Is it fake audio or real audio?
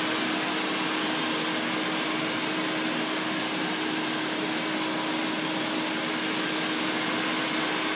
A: real